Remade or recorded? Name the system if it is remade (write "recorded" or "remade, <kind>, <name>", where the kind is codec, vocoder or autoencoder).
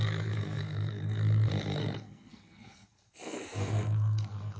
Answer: remade, codec, SNAC